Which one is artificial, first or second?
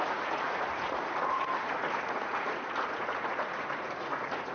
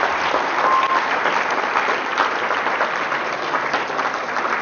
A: first